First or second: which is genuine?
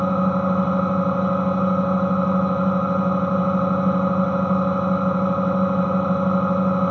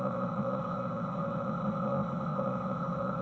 first